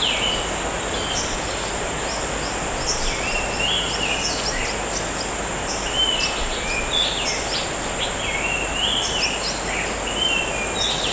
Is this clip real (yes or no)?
yes